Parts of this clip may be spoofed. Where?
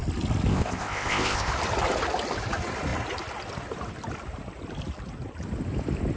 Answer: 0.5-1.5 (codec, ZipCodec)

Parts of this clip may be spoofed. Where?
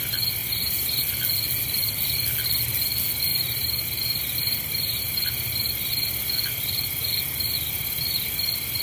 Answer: 0.4-1.0 (vocoder, BigVGAN v2); 3.3-5.2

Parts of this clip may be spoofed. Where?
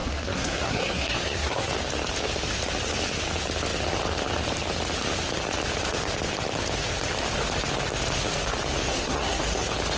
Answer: 0.0-1.7 (codec, SNAC); 8.9-9.4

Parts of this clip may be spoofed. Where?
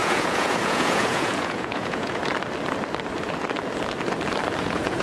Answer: 0.0-2.2 (vocoder, Vocos); 4.6-5.0